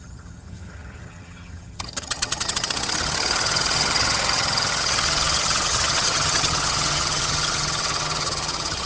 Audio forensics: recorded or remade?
remade